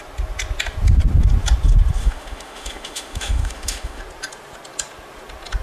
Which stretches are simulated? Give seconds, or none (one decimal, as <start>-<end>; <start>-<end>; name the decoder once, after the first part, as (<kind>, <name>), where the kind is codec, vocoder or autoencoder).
2.0-4.0 (autoencoder, DAC-VAE)